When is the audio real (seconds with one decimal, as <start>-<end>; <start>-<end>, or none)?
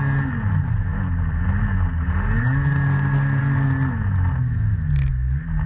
0.0-5.7